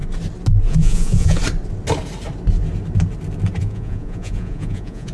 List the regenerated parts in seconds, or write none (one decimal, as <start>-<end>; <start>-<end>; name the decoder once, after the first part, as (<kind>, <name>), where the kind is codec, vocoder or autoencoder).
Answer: 0.7-1.4 (vocoder, Vocos); 3.6-5.1